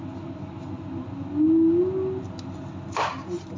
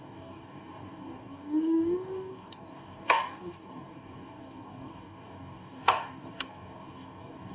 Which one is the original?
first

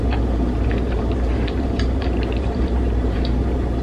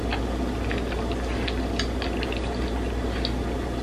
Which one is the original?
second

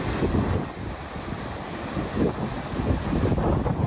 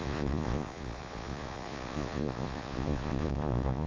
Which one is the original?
first